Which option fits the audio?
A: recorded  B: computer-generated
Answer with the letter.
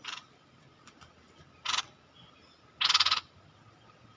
A